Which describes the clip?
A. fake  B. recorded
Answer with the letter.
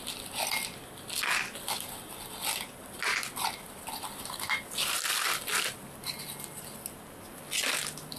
B